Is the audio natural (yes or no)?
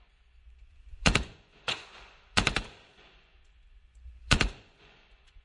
no